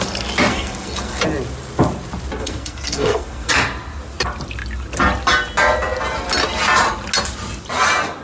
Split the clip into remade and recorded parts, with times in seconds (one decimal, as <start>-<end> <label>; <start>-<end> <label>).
0.0-0.5 recorded; 0.5-1.2 remade; 1.2-2.4 recorded; 2.4-3.5 remade; 3.5-8.2 recorded